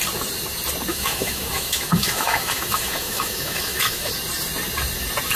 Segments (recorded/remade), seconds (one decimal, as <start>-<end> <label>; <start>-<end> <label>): 0.0-0.9 recorded; 0.9-4.1 remade; 4.1-5.4 recorded